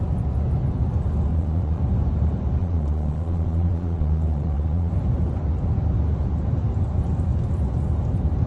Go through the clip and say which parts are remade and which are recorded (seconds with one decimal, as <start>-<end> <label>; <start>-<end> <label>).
0.0-1.3 recorded; 1.3-1.8 remade; 1.8-2.6 recorded; 2.6-4.9 remade; 4.9-8.5 recorded